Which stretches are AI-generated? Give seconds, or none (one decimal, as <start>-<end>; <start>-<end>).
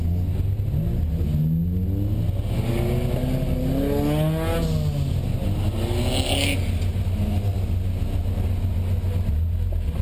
none